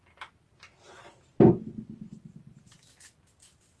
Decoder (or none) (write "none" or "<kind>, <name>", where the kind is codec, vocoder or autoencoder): none